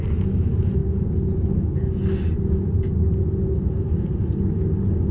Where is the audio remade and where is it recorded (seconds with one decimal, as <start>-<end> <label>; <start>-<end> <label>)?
0.0-5.1 recorded